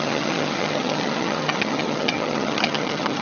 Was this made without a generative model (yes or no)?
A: no